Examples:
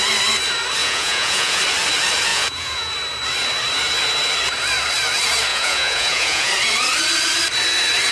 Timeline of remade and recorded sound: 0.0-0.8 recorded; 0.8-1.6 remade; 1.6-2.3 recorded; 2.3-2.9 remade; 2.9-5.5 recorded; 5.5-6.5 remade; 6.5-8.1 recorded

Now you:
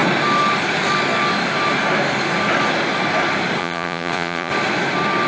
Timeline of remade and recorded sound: 0.0-3.6 recorded; 3.6-4.5 remade; 4.5-5.3 recorded

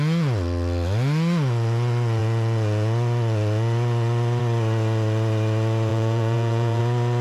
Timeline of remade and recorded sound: 0.0-5.9 recorded; 5.9-6.8 remade; 6.8-7.2 recorded

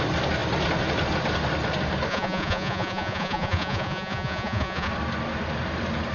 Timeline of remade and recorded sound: 0.0-2.1 recorded; 2.1-4.9 remade; 4.9-6.1 recorded

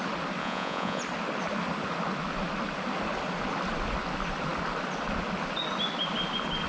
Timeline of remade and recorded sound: 0.0-0.4 recorded; 0.4-1.0 remade; 1.0-6.7 recorded